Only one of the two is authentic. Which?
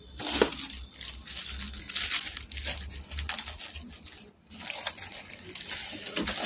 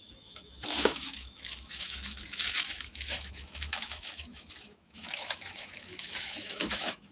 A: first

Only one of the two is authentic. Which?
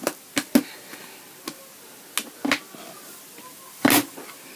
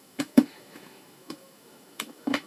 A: first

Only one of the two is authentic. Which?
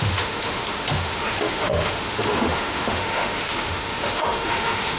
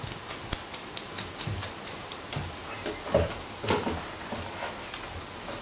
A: second